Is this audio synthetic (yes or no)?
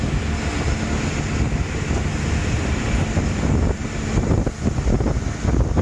no